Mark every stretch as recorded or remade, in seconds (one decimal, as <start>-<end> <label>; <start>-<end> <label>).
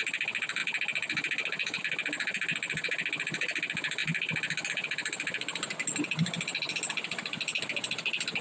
0.0-8.4 recorded